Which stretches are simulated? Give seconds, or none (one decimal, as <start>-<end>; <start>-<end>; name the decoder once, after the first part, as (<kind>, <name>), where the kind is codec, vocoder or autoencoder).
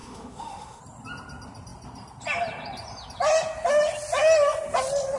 0.0-0.8 (autoencoder, DAC-VAE)